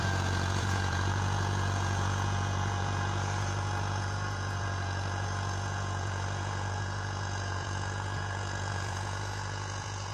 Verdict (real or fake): fake